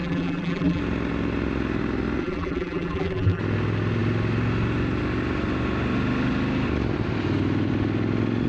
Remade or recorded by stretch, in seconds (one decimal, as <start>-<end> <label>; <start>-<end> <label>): 0.0-0.8 remade; 0.8-2.2 recorded; 2.2-3.4 remade; 3.4-8.5 recorded